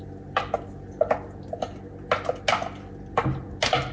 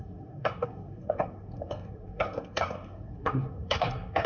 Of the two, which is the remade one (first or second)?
second